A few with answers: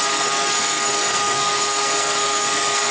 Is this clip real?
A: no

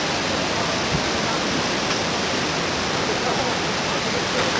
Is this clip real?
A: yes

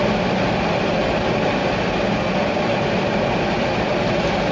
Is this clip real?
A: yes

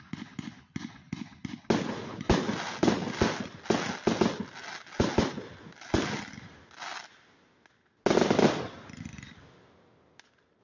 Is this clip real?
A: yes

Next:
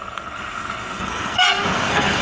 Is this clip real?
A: no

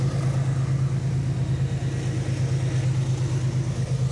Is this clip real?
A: yes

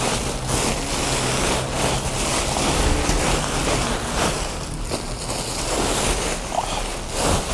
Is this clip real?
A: yes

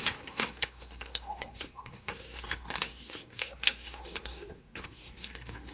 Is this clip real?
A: no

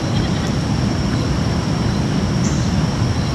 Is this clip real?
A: yes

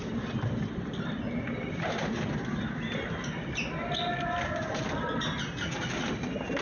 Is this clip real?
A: yes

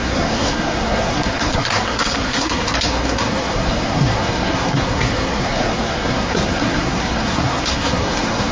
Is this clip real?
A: no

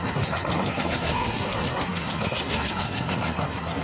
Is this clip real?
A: no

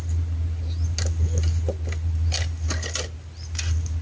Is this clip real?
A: yes